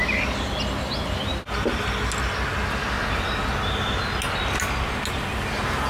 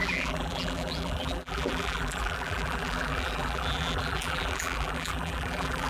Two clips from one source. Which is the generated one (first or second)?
second